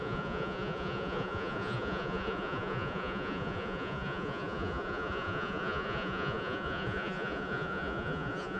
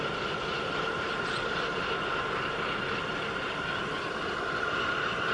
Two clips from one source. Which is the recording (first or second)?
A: second